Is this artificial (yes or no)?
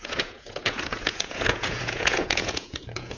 yes